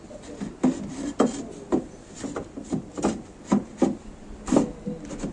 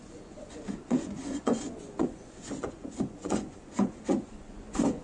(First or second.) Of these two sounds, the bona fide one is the first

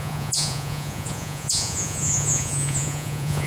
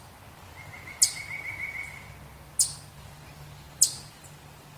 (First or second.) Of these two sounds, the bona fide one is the second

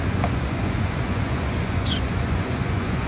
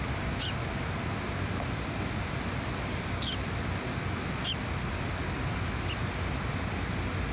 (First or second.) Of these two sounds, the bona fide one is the second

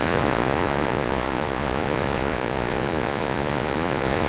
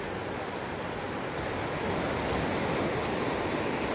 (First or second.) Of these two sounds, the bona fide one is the second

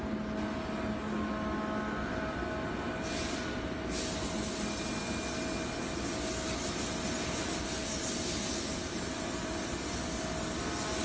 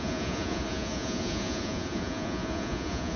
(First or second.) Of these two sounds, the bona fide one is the first